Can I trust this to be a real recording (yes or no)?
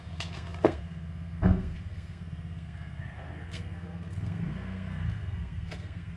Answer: no